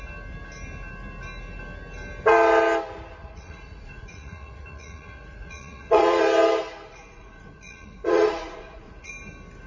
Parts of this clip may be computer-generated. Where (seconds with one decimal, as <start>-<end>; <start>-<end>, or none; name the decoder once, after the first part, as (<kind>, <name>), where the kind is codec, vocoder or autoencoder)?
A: 3.2-6.2 (vocoder, Vocos); 6.9-9.1